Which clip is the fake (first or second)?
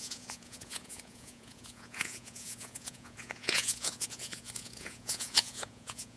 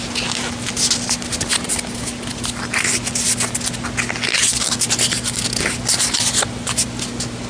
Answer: first